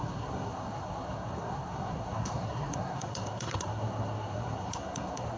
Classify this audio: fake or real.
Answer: fake